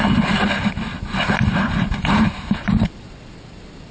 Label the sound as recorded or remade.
remade